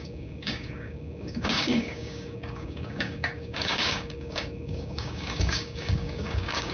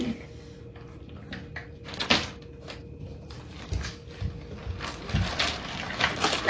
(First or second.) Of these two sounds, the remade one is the first